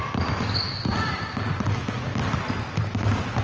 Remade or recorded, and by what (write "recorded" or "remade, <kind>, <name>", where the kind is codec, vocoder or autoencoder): recorded